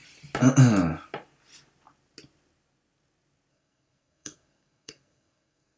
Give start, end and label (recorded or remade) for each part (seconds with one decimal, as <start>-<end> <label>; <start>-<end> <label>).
0.0-3.5 recorded; 3.5-5.8 remade